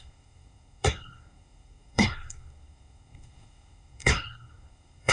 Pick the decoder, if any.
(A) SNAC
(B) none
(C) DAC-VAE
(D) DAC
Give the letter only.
A